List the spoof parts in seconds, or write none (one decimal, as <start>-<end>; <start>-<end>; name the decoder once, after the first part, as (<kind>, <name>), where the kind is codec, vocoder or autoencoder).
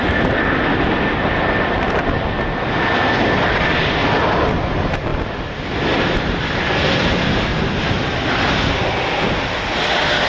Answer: none